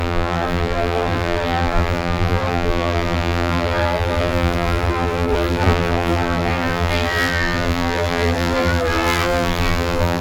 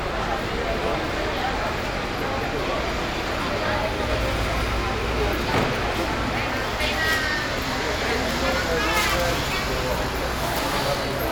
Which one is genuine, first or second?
second